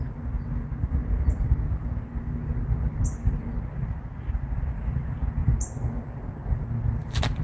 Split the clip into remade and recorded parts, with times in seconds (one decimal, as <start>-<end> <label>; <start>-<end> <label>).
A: 0.0-7.4 recorded

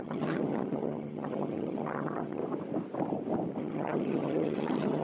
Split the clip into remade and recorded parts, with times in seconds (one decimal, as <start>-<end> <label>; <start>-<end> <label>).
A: 0.0-2.4 remade; 2.4-3.6 recorded; 3.6-5.0 remade

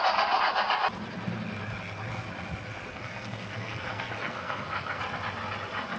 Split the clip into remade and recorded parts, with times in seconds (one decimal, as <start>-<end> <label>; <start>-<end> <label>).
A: 0.0-2.9 recorded; 2.9-5.0 remade; 5.0-6.0 recorded

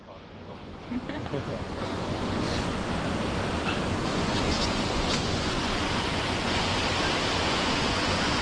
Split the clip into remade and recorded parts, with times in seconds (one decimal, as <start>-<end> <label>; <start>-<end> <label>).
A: 0.0-2.8 remade; 2.8-4.0 recorded; 4.0-6.8 remade; 6.8-7.4 recorded; 7.4-8.4 remade

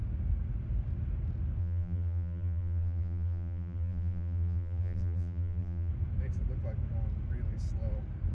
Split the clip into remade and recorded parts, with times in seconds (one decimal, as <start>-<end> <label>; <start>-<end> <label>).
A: 0.0-1.6 recorded; 1.6-5.9 remade; 5.9-8.3 recorded

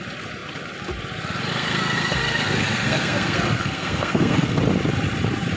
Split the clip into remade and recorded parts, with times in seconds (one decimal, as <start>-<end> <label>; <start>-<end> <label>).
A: 0.0-1.5 recorded; 1.5-4.6 remade; 4.6-5.6 recorded